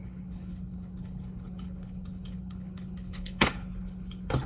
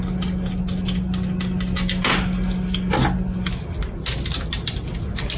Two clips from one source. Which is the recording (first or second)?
second